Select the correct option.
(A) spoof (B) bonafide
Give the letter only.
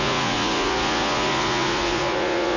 A